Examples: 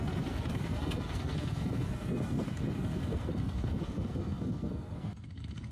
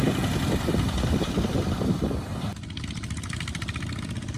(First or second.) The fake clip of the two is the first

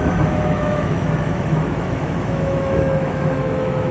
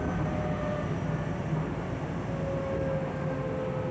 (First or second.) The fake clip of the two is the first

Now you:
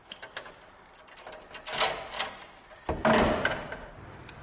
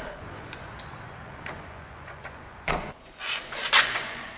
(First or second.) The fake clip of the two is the second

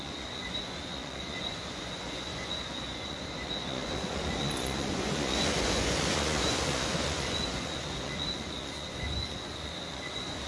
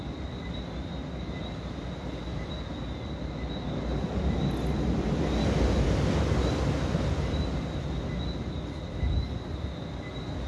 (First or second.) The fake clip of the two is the first